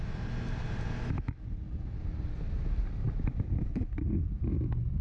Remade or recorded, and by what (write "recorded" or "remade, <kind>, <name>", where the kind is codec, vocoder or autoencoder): recorded